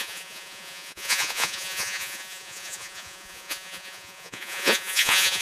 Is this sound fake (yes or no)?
yes